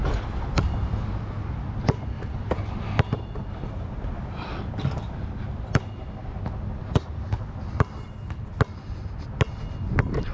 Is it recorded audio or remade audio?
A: recorded